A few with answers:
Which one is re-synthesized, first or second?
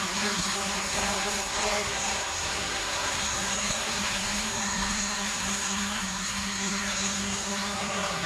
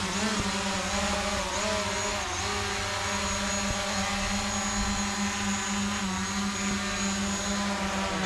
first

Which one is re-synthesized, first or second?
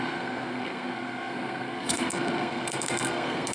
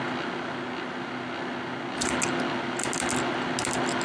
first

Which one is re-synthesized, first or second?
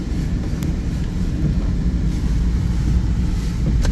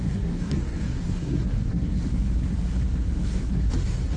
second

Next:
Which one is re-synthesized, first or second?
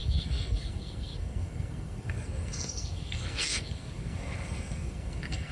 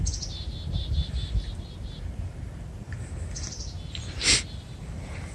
first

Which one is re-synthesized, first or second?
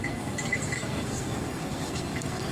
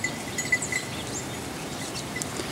first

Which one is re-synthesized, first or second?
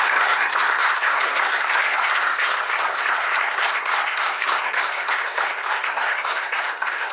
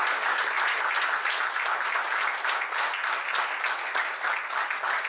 first